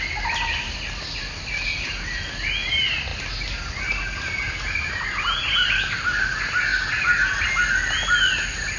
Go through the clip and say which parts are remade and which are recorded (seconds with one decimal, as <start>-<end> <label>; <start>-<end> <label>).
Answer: 0.0-8.8 recorded

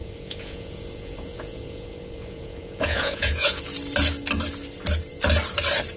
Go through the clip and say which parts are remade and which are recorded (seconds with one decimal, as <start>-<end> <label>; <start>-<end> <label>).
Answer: 0.0-3.6 remade; 3.6-6.0 recorded

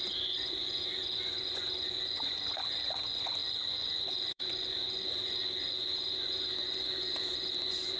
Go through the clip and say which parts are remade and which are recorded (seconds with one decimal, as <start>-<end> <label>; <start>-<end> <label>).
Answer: 0.0-8.0 remade

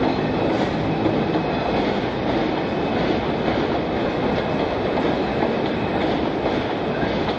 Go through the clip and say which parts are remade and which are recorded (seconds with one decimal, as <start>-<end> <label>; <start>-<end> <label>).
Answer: 0.0-7.4 recorded

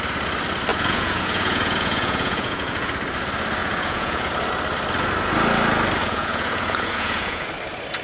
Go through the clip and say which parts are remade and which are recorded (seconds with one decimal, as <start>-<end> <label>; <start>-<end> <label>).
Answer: 0.0-0.7 recorded; 0.7-2.9 remade; 2.9-3.6 recorded; 3.6-4.3 remade; 4.3-6.0 recorded; 6.0-7.5 remade; 7.5-8.0 recorded

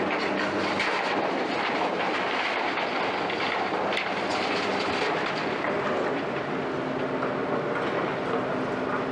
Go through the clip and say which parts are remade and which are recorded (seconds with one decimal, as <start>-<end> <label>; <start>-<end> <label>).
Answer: 0.0-9.1 recorded